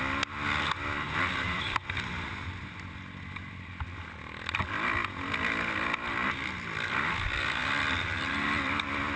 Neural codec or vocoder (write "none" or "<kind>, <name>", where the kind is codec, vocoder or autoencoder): none